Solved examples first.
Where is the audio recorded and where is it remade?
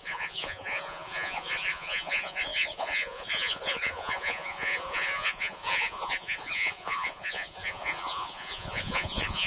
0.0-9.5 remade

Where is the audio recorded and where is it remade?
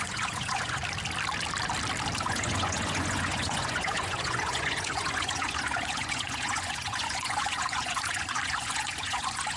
0.0-0.8 remade; 0.8-2.2 recorded; 2.2-9.6 remade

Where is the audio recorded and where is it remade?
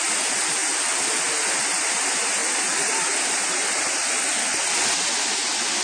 0.0-5.8 recorded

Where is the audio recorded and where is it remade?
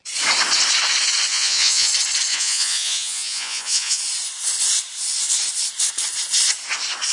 0.0-1.3 recorded; 1.3-1.9 remade; 1.9-2.3 recorded; 2.3-4.0 remade; 4.0-7.1 recorded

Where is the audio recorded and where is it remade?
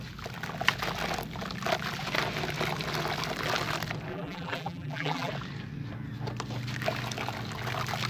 0.0-4.1 recorded; 4.1-5.3 remade; 5.3-8.1 recorded